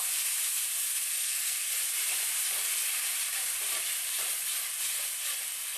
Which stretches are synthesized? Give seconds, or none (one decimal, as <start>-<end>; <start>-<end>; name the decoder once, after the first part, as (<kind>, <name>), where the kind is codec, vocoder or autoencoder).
1.1-1.7 (codec, SNAC)